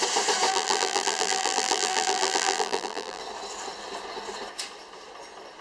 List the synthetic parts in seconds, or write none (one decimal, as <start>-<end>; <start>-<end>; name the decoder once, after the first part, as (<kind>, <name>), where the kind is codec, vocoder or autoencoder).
0.5-3.2 (vocoder, BigVGAN v2)